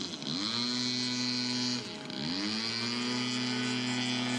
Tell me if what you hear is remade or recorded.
recorded